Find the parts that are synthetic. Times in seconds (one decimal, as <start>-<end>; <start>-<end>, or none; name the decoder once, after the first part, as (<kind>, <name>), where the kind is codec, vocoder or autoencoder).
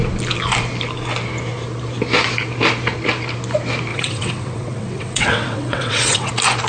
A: 3.9-6.3 (vocoder, WaveNeXt)